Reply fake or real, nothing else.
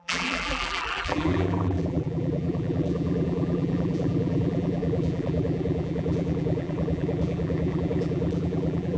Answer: fake